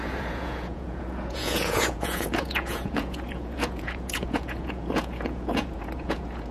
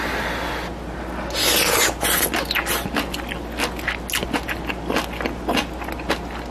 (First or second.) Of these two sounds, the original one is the second